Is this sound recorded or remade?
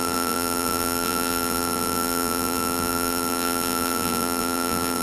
remade